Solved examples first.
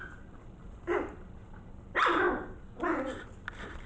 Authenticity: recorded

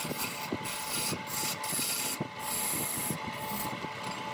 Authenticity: recorded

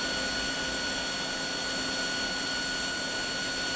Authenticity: recorded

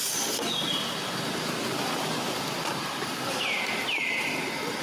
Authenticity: recorded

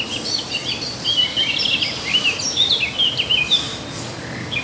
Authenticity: remade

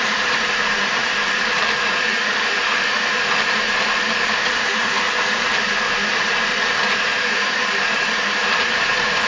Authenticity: remade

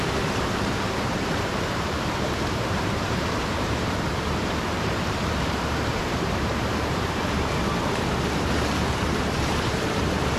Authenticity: remade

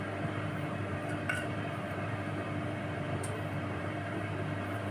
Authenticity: remade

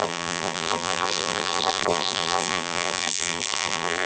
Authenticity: remade